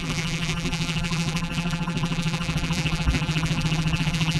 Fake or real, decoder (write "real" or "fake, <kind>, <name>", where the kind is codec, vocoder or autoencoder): fake, vocoder, BigVGAN v2